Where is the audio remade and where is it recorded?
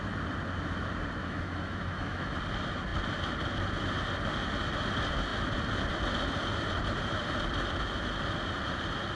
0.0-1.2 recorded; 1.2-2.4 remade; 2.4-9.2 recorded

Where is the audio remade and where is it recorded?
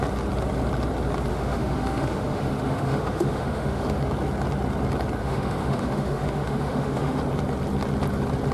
0.0-1.3 recorded; 1.3-4.0 remade; 4.0-5.2 recorded; 5.2-7.2 remade; 7.2-8.5 recorded